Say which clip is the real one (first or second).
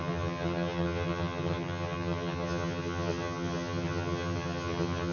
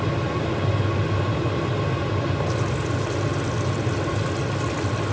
second